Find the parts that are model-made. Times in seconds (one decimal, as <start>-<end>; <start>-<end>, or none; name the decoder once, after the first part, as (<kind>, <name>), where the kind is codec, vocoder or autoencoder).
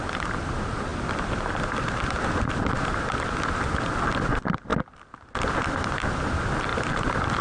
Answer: none